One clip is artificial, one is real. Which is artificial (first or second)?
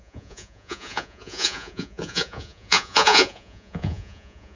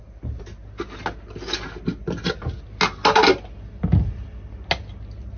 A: first